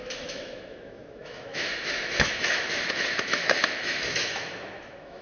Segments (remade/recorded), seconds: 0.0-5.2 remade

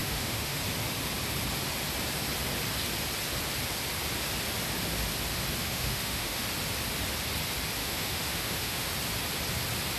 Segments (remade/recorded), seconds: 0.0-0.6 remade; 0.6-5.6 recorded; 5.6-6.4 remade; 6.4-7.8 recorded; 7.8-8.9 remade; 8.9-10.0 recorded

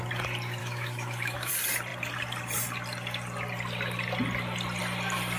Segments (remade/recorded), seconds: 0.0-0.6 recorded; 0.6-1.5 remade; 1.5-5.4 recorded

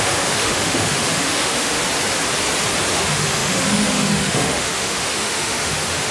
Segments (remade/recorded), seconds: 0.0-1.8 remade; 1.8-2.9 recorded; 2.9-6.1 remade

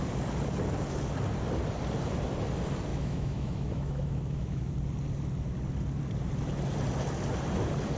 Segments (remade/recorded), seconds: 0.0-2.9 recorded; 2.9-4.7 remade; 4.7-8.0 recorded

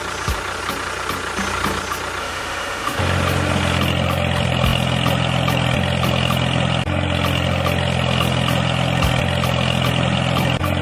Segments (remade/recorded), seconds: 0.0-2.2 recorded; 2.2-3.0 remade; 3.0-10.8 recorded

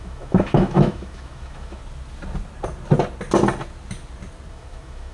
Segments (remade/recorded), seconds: 0.0-1.8 remade; 1.8-4.5 recorded; 4.5-5.1 remade

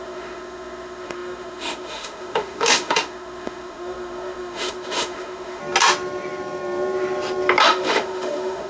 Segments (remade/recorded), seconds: 0.0-5.6 remade; 5.6-7.6 recorded; 7.6-8.7 remade